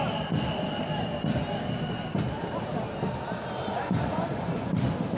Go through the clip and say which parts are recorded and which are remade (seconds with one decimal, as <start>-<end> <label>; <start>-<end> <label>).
0.0-3.6 recorded; 3.6-4.7 remade; 4.7-5.2 recorded